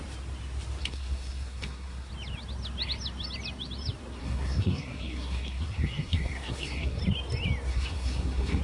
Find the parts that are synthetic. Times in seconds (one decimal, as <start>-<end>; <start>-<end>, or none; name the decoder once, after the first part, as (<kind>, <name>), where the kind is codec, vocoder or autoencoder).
0.8-2.1 (codec, SNAC); 4.2-7.0; 7.7-8.6

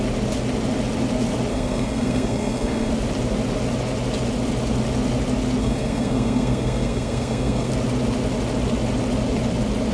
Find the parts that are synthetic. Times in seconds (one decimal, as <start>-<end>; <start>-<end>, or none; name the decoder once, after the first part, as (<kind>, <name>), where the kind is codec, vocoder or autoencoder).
1.5-2.9 (codec, SNAC); 5.6-7.7

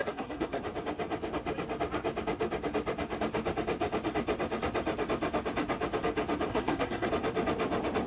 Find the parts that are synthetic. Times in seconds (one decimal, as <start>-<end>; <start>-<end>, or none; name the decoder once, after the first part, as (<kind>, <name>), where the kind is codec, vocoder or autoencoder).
0.0-0.6 (codec, SNAC); 6.5-7.1

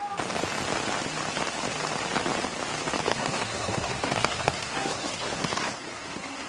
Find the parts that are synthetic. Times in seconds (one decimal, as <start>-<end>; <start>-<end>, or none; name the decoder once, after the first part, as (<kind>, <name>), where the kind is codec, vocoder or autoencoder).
3.1-6.5 (codec, SNAC)

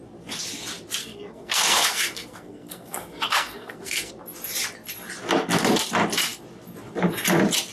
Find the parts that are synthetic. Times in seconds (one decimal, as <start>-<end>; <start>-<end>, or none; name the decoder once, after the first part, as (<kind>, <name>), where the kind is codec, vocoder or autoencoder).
1.0-4.1 (codec, SNAC)

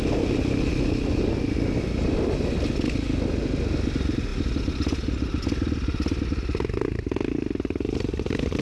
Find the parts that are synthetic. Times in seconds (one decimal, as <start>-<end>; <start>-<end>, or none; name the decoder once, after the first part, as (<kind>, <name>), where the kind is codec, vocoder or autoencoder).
none